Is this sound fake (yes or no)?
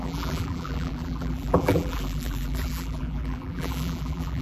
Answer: yes